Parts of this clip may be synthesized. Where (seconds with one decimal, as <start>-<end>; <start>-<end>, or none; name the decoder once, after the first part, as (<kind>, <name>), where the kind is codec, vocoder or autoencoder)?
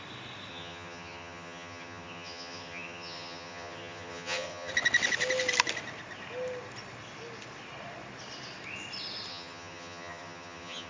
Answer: 0.5-4.7 (vocoder, HiFi-GAN); 9.3-10.9